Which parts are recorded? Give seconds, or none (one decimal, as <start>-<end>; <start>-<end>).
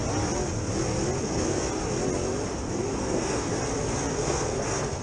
0.0-1.2; 1.6-3.0; 3.5-4.1